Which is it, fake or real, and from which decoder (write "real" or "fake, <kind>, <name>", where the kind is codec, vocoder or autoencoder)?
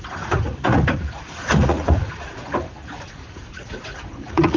fake, vocoder, Vocos